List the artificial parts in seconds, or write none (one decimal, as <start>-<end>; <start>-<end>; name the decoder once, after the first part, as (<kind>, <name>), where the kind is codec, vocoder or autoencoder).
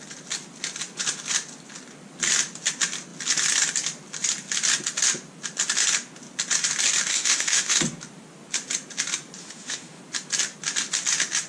7.1-7.8 (autoencoder, DAC-VAE); 9.4-10.0